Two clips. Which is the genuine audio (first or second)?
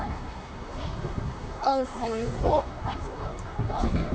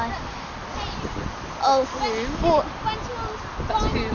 second